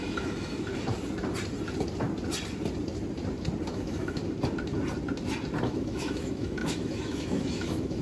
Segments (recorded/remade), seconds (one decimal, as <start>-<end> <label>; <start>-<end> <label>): 0.0-0.7 remade; 0.7-3.7 recorded; 3.7-4.2 remade; 4.2-5.6 recorded; 5.6-8.0 remade